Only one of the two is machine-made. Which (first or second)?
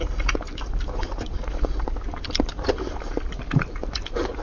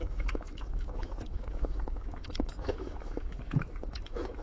second